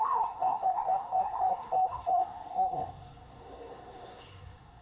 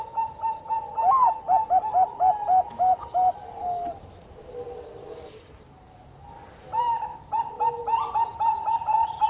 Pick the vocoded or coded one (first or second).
first